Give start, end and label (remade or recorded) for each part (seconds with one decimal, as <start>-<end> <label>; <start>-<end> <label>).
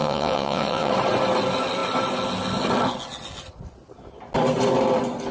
0.0-0.9 remade; 0.9-5.3 recorded